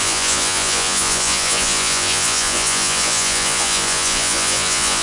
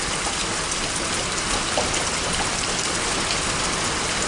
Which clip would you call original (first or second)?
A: second